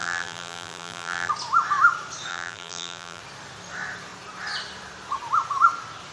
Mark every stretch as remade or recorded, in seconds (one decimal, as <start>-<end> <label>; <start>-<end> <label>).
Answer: 0.0-1.3 remade; 1.3-2.3 recorded; 2.3-3.2 remade; 3.2-6.1 recorded